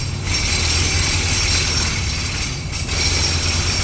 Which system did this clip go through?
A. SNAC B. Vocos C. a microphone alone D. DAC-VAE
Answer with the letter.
C